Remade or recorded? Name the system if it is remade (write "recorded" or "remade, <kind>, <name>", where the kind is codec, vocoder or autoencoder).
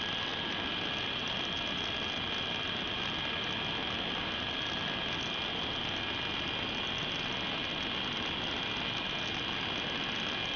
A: recorded